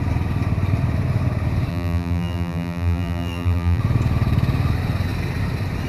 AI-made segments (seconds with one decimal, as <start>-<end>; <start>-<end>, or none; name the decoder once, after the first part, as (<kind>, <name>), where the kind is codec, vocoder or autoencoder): 1.7-3.8 (vocoder, BigVGAN v2)